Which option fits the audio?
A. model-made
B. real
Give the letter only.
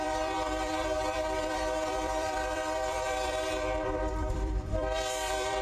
A